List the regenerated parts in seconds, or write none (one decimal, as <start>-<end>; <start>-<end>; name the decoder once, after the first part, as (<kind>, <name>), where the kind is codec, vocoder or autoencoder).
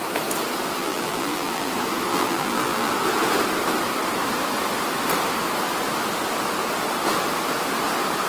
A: 0.8-1.7 (vocoder, BigVGAN v2); 2.1-2.9